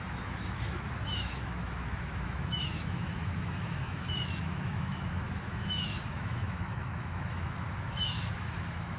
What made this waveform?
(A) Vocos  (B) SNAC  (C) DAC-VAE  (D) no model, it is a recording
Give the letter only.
C